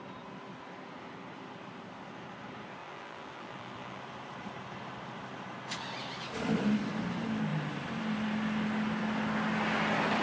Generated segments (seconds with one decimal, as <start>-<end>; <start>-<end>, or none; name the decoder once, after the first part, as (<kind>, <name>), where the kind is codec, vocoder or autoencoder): 2.8-4.0 (vocoder, BigVGAN v2)